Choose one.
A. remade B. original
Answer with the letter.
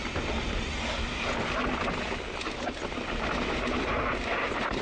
B